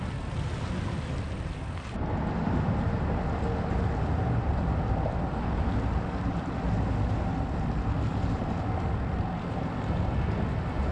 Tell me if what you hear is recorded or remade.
recorded